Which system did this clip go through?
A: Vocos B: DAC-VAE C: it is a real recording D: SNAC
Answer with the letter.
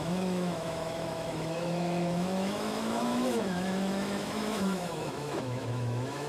B